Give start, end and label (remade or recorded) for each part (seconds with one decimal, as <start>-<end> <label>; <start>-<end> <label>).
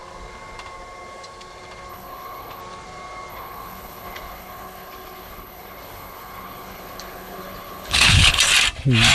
0.0-1.9 recorded; 1.9-2.6 remade; 2.6-3.3 recorded; 3.3-8.4 remade; 8.4-9.1 recorded